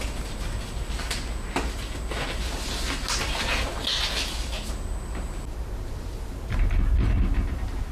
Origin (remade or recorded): recorded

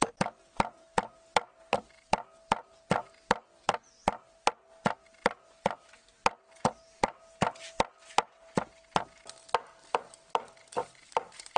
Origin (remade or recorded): recorded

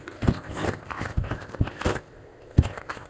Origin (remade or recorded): remade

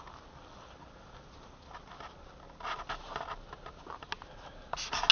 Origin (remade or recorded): recorded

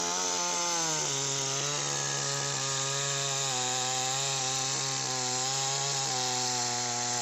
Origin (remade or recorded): recorded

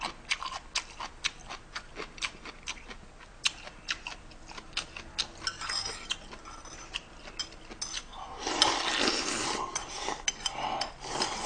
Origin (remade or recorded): recorded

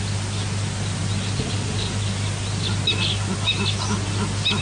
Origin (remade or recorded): recorded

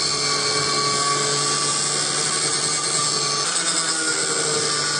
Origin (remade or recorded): recorded